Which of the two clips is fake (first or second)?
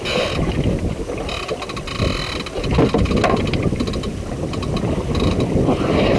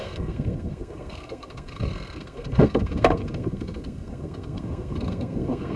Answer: second